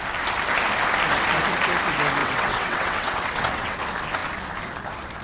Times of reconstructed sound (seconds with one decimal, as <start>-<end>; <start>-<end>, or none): 2.2-3.8